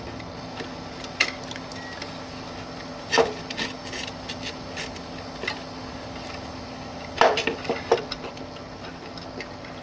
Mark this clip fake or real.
real